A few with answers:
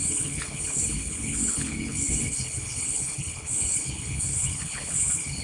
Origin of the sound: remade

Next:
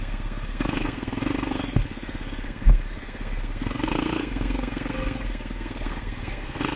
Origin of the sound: remade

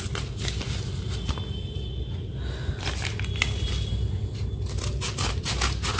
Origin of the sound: recorded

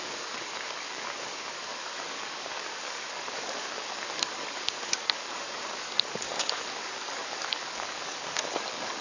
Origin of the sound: remade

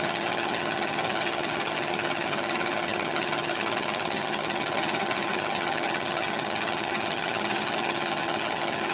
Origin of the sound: remade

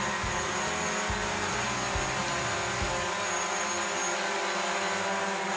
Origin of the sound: recorded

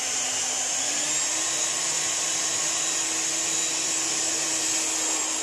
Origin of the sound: recorded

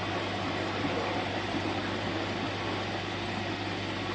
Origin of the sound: recorded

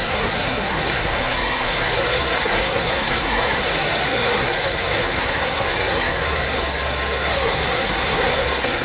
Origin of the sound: remade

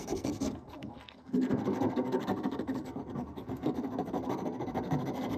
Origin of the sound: remade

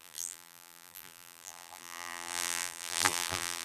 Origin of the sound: remade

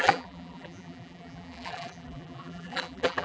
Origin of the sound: remade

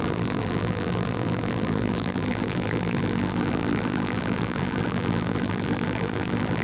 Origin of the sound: remade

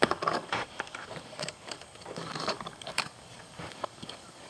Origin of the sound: remade